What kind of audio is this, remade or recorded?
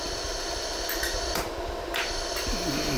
recorded